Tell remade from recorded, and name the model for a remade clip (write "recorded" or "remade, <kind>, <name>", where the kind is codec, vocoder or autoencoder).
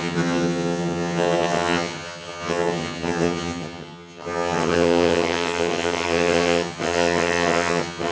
remade, vocoder, HiFi-GAN